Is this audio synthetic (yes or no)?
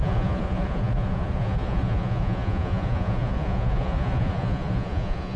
yes